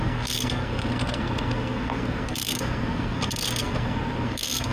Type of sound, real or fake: fake